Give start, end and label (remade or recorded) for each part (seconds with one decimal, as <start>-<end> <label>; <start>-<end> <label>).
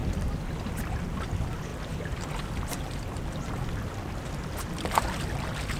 0.0-5.8 recorded